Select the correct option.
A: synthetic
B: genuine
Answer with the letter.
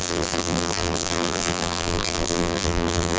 A